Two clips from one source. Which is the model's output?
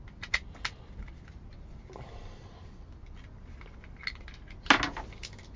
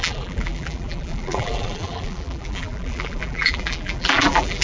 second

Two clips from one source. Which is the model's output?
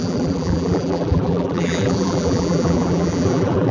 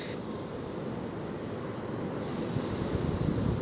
first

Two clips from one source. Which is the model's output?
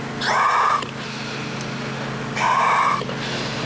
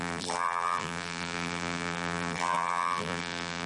second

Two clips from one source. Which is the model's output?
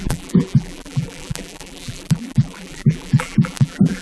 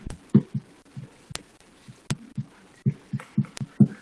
first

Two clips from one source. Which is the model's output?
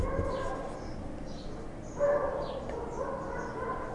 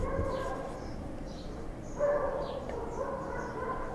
second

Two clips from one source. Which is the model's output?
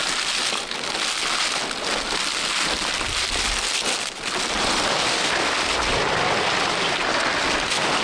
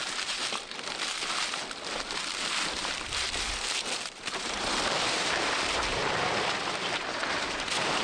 second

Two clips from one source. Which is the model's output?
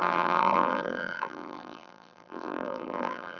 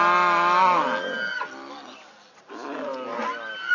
first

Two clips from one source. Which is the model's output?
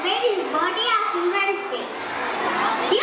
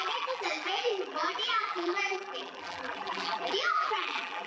second